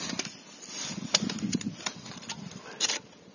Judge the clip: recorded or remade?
recorded